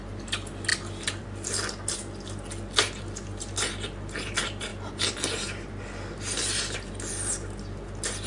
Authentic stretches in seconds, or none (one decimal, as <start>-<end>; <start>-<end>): 0.0-8.3